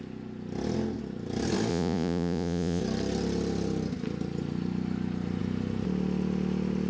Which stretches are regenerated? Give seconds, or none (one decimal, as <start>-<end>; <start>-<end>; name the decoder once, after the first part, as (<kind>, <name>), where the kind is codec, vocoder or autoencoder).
1.7-2.8 (vocoder, Vocos)